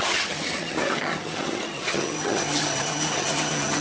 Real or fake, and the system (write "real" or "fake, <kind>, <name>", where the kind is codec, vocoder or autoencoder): fake, vocoder, HiFi-GAN